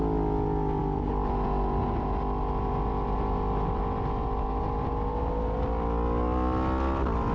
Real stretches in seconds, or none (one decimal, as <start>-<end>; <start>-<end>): 0.0-7.3